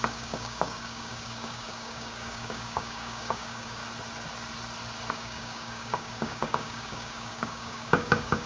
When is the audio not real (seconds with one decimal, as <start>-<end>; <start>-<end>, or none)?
0.0-3.8; 5.1-8.5